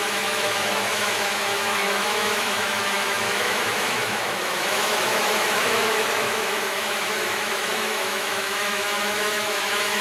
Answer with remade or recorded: remade